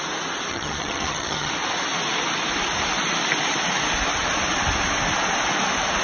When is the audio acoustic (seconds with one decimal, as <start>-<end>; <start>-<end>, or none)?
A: 0.0-0.5; 1.5-6.0

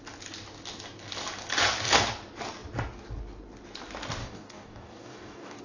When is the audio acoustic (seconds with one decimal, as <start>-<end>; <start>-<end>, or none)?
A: 0.0-4.2